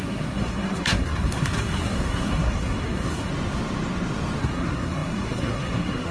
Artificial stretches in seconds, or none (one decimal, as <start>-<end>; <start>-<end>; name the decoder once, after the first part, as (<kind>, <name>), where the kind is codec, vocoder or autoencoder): 0.0-3.3 (codec, SNAC); 4.4-6.1